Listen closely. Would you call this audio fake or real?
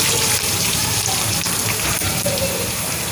fake